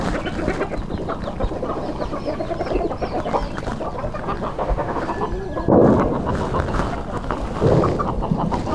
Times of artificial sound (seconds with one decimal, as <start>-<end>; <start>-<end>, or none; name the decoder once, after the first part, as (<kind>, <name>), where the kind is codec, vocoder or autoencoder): 4.5-5.0 (autoencoder, DAC-VAE)